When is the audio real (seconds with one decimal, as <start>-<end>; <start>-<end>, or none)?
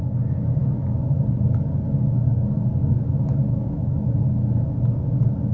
0.0-0.6; 1.2-2.8; 4.2-5.5